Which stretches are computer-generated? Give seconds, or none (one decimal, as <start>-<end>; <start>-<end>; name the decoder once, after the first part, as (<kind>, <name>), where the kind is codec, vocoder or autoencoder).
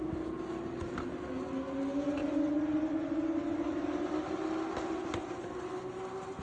none